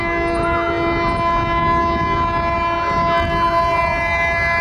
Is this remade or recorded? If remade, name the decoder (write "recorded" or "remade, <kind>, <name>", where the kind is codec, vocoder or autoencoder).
recorded